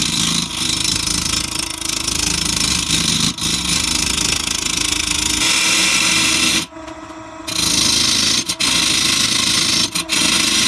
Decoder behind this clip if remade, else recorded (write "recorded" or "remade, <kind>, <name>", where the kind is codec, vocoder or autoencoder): recorded